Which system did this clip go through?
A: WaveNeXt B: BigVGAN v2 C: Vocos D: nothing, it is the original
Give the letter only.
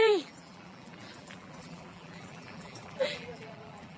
B